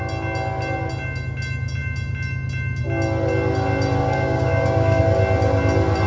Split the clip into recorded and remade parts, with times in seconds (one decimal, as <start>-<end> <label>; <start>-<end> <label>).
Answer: 0.0-4.0 recorded; 4.0-5.0 remade; 5.0-6.1 recorded